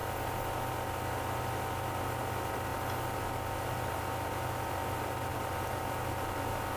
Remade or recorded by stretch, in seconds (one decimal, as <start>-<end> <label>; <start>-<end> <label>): 0.0-6.8 recorded